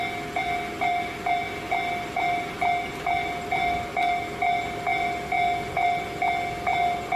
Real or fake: real